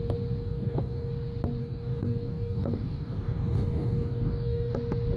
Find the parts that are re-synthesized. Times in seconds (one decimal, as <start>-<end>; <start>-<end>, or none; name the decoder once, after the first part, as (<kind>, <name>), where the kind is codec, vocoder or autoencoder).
0.4-1.1 (codec, DAC); 1.6-4.7